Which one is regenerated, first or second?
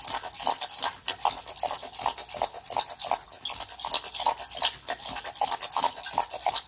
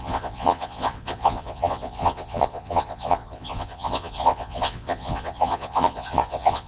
second